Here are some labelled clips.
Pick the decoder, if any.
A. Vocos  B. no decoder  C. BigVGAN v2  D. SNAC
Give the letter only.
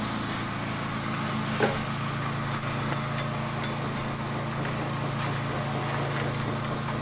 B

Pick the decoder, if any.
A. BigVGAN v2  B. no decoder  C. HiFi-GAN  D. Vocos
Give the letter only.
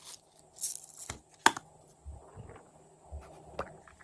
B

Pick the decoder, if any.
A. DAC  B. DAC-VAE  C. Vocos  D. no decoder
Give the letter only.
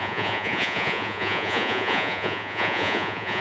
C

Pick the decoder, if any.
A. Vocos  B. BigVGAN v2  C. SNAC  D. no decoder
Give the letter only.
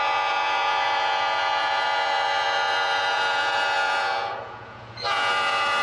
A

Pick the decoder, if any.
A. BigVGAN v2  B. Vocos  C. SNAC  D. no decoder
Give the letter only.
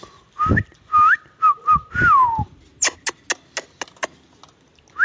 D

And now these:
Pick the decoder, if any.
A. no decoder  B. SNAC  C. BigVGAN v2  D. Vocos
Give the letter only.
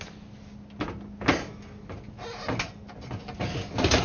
A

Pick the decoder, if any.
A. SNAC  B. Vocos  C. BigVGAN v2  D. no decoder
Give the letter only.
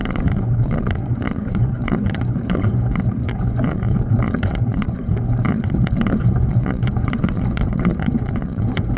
B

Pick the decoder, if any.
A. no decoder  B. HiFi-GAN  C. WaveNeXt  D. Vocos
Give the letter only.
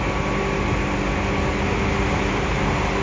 A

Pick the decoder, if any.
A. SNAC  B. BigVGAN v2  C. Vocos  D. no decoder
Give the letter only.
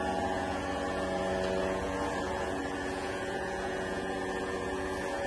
C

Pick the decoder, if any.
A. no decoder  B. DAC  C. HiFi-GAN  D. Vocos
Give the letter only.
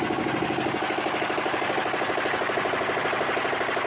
A